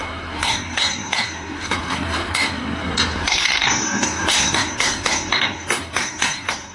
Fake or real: fake